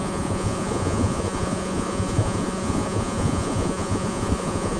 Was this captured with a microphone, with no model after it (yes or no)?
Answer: no